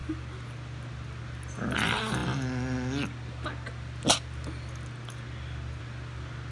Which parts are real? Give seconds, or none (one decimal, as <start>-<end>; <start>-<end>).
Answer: 0.0-6.5